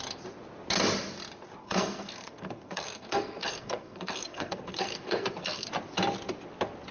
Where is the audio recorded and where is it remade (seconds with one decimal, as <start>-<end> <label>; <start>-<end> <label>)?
0.0-1.6 recorded; 1.6-5.7 remade; 5.7-6.9 recorded